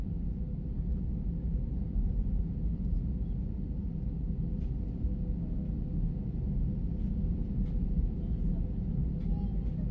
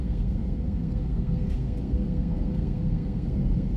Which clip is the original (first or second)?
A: first